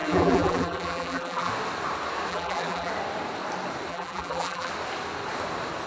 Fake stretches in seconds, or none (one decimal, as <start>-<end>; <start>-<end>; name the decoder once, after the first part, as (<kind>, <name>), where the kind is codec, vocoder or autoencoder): 0.0-1.5 (vocoder, BigVGAN v2); 2.3-2.9; 3.9-4.7